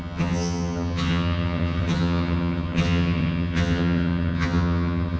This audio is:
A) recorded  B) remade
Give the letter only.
B